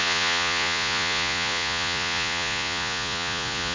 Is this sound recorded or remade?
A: remade